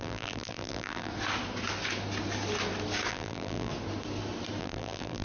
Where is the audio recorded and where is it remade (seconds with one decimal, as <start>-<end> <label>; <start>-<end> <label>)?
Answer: 0.0-1.1 remade; 1.1-3.1 recorded; 3.1-3.7 remade; 3.7-4.6 recorded; 4.6-5.2 remade